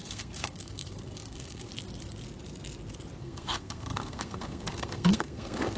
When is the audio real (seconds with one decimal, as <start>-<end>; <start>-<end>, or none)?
1.7-3.2